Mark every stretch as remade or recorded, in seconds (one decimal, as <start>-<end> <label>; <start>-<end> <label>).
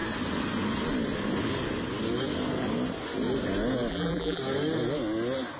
0.0-3.9 recorded; 3.9-4.4 remade; 4.4-5.6 recorded